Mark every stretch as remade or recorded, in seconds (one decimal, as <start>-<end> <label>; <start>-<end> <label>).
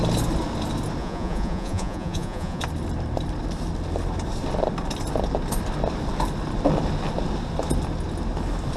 0.0-1.0 recorded; 1.0-2.6 remade; 2.6-8.8 recorded